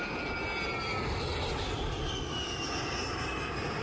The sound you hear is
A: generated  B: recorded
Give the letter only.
B